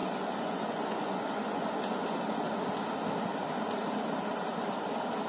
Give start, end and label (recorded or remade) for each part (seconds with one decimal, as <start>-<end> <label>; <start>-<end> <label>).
0.0-1.8 remade; 1.8-5.3 recorded